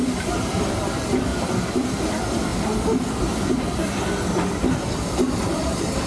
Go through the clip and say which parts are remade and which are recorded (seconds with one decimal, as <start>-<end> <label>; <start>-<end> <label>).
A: 0.0-1.3 remade; 1.3-1.9 recorded; 1.9-2.5 remade; 2.5-4.7 recorded; 4.7-6.1 remade